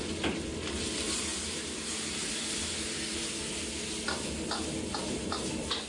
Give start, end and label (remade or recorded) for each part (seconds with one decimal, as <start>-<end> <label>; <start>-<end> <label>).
0.0-4.9 recorded; 4.9-5.9 remade